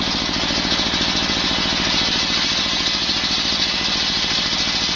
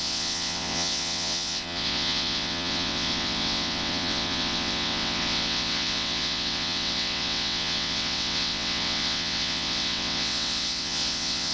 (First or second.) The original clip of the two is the first